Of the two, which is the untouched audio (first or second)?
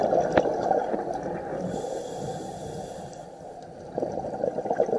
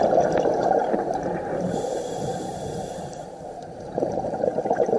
first